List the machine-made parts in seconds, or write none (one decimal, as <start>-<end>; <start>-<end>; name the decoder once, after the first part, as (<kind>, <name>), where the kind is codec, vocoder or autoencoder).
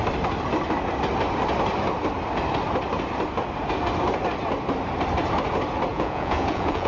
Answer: 5.9-6.9 (vocoder, Vocos)